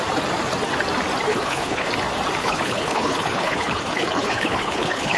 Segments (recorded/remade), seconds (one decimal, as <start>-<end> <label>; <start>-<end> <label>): 0.0-1.3 recorded; 1.3-1.9 remade; 1.9-2.4 recorded; 2.4-5.2 remade